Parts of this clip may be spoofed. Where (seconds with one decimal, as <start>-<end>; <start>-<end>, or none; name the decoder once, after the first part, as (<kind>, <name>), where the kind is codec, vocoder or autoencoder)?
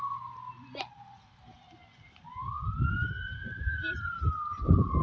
0.0-0.4 (vocoder, BigVGAN v2); 0.9-1.5; 3.6-5.0